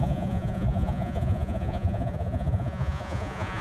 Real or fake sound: fake